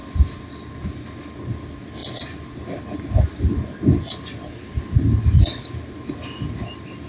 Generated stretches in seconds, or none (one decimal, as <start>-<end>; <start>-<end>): none